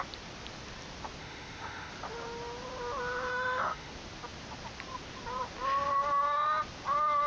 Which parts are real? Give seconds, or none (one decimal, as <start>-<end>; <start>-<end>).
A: 0.0-1.2; 1.9-3.3; 3.9-7.3